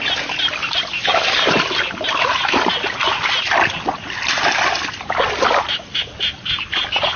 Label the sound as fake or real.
real